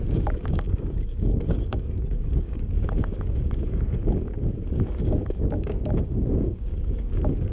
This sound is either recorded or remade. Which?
remade